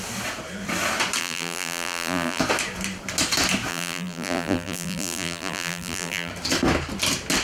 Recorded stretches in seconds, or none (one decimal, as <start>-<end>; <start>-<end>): 0.0-1.2; 2.4-3.7; 6.3-7.4